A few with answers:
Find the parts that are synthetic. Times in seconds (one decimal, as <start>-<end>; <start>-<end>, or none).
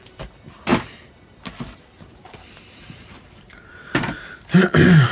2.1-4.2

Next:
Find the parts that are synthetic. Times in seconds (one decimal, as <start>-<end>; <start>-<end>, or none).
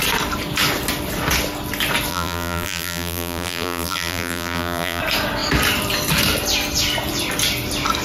2.1-5.0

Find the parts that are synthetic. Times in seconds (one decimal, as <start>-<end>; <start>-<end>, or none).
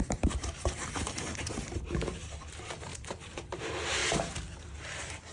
0.0-4.0; 4.6-5.3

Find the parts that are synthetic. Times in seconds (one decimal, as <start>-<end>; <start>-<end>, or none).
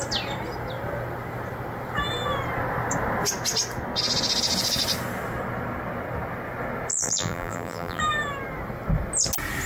6.9-8.0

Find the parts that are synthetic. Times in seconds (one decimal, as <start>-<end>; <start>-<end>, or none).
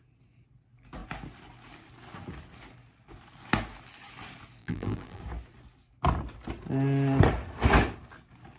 4.6-5.2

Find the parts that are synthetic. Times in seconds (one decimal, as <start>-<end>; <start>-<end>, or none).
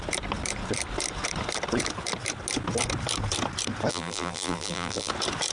3.9-5.1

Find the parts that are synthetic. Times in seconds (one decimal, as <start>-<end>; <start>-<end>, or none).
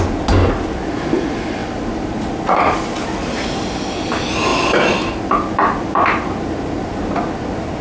1.6-4.1; 4.5-6.3